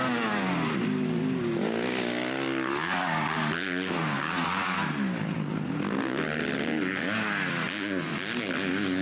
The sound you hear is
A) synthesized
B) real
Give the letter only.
B